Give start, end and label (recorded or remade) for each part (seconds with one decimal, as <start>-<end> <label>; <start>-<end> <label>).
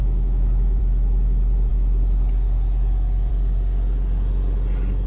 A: 0.0-0.8 remade; 0.8-5.1 recorded